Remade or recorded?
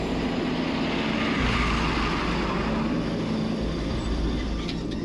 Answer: recorded